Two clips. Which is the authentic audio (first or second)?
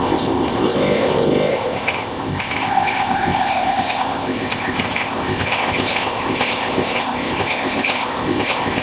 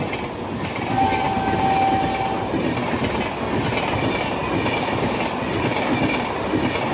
second